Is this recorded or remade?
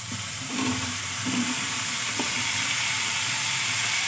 remade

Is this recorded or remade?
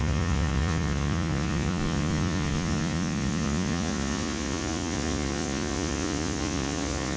remade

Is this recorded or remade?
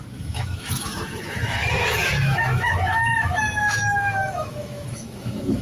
remade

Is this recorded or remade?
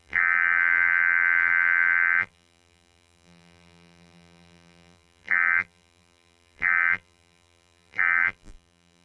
remade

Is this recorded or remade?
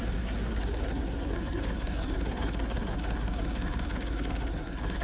remade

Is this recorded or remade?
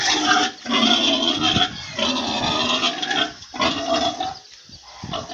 recorded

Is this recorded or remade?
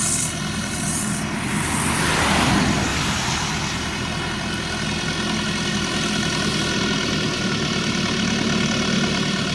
recorded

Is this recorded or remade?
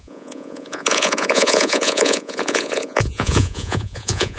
remade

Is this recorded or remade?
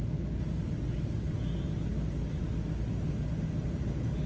recorded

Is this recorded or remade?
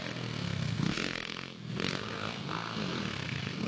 remade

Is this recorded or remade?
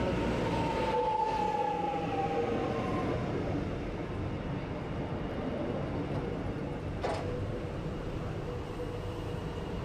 recorded